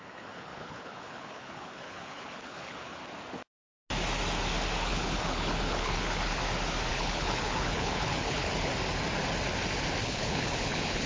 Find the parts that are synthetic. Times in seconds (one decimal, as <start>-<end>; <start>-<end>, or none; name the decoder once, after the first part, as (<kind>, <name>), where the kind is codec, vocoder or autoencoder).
0.0-3.0 (codec, HILCodec); 4.9-6.4; 6.9-8.7; 10.0-11.1